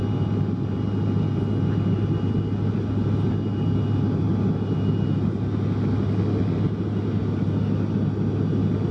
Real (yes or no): yes